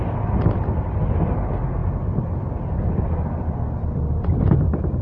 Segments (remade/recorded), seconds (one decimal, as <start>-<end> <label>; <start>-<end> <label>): 0.0-5.0 recorded